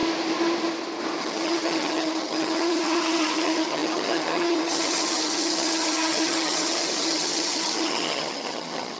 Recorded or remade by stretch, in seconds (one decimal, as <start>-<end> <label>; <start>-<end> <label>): 0.0-1.2 recorded; 1.2-9.0 remade